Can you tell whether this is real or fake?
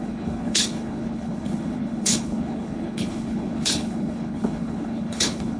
fake